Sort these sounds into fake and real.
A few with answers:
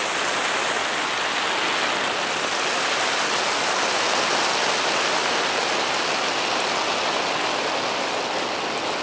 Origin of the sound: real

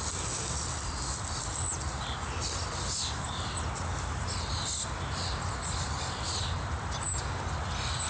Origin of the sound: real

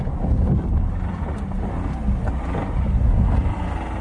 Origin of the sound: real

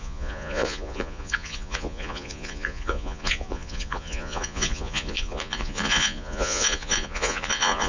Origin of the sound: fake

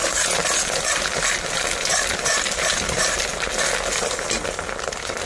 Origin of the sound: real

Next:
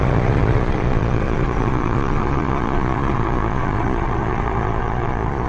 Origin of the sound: fake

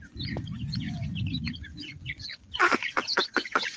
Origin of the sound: fake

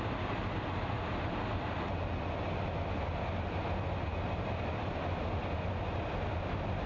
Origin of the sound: real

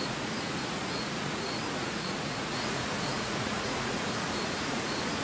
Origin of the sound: fake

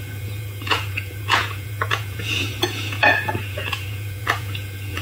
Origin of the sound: fake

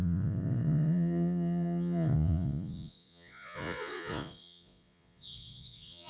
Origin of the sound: fake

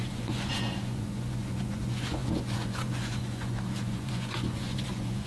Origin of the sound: fake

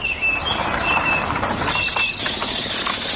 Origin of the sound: real